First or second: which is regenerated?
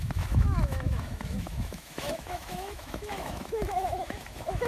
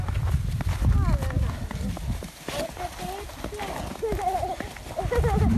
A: first